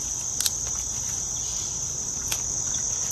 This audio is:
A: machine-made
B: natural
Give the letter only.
B